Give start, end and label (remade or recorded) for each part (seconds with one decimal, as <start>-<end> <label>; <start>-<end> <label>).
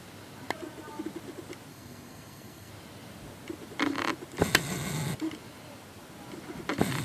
0.0-1.7 recorded; 1.7-2.7 remade; 2.7-7.0 recorded